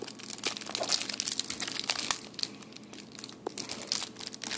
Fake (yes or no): no